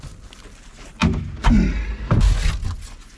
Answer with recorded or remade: recorded